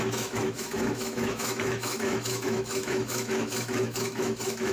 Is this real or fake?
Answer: fake